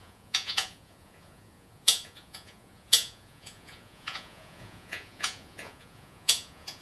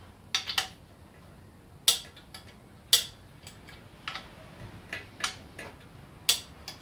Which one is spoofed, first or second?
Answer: first